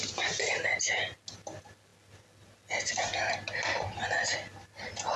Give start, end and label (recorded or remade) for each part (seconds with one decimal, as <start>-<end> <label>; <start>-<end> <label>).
0.0-5.2 recorded

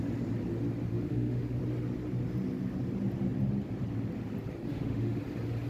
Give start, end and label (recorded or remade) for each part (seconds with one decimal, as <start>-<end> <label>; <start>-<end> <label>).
0.0-0.9 recorded; 0.9-1.6 remade; 1.6-4.7 recorded; 4.7-5.2 remade; 5.2-5.7 recorded

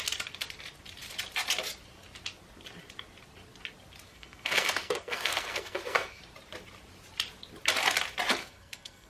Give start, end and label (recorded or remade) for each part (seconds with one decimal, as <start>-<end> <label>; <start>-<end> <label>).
0.0-4.1 recorded; 4.1-6.2 remade; 6.2-8.4 recorded; 8.4-9.1 remade